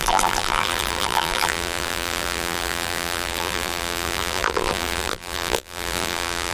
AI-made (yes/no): yes